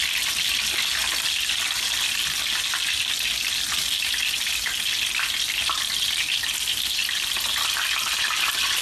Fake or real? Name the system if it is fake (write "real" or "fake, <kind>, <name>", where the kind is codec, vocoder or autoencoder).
real